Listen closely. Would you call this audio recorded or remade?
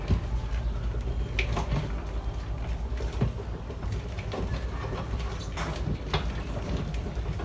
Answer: recorded